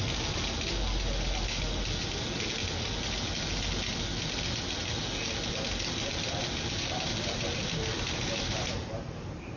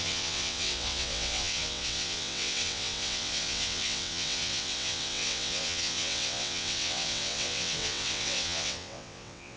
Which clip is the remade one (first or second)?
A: second